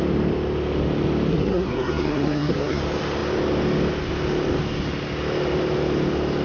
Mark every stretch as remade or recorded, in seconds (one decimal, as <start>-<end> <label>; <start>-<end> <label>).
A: 0.0-1.3 recorded; 1.3-2.8 remade; 2.8-6.4 recorded